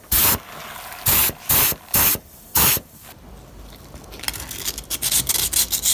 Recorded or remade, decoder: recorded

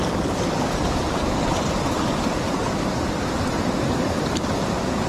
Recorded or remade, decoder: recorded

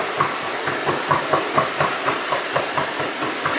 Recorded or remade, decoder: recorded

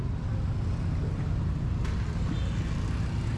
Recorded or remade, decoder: recorded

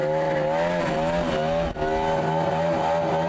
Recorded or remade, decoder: recorded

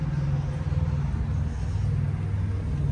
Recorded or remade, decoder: recorded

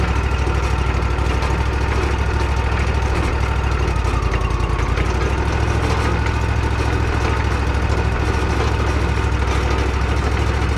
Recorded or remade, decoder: recorded